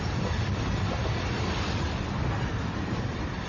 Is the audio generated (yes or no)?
yes